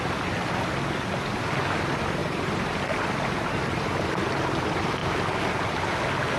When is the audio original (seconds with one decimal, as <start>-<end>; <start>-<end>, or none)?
0.0-2.2; 2.8-6.4